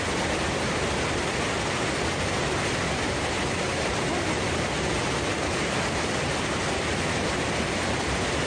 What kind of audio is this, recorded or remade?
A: recorded